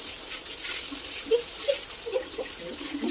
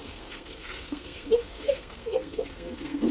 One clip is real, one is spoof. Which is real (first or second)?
first